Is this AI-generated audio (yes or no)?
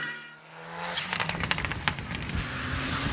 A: no